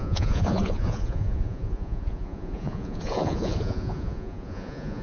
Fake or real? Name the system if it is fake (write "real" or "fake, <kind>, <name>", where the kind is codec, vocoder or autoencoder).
fake, vocoder, Vocos